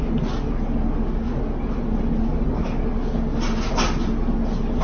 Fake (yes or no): no